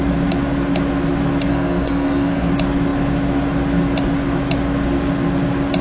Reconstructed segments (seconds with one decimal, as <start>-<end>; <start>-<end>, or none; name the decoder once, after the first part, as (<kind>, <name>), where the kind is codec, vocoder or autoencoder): 1.5-2.5 (codec, SNAC)